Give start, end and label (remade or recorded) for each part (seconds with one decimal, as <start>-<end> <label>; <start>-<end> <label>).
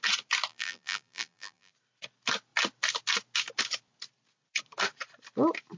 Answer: 0.0-0.5 recorded; 0.5-1.7 remade; 1.7-5.8 recorded